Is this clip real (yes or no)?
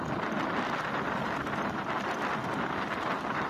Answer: yes